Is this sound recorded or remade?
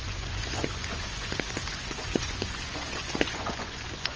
remade